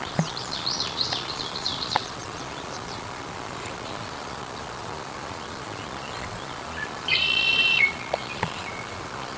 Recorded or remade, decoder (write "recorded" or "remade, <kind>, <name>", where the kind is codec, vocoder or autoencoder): remade, vocoder, Vocos